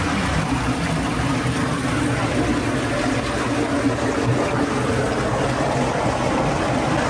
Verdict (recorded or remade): recorded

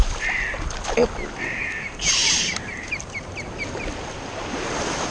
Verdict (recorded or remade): recorded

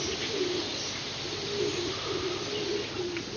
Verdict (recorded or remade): recorded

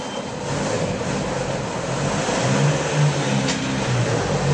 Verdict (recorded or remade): recorded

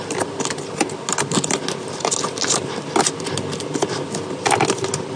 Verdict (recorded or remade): recorded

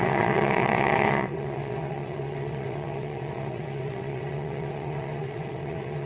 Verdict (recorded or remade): remade